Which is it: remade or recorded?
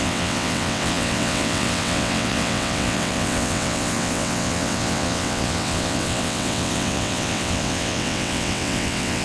remade